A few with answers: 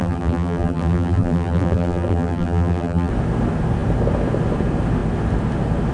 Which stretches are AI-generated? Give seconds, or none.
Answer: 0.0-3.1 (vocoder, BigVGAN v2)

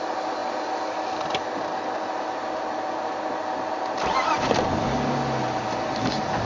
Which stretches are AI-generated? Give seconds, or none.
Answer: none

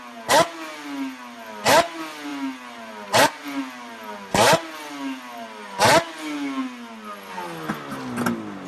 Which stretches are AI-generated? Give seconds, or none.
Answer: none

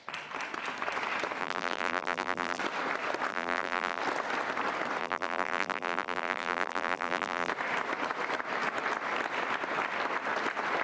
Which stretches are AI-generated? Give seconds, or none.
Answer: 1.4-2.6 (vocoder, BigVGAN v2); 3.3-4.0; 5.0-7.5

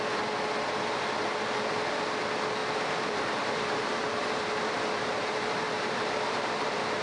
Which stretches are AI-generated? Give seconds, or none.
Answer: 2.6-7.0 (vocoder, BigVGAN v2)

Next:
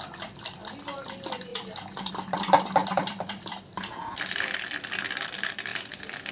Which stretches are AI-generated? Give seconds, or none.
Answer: 2.8-4.6 (vocoder, BigVGAN v2)

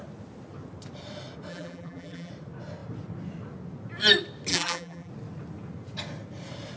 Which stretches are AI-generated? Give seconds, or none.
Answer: 1.5-2.3 (vocoder, BigVGAN v2); 4.5-5.1